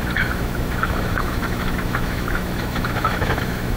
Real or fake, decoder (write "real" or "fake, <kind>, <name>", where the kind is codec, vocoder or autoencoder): fake, autoencoder, DAC-VAE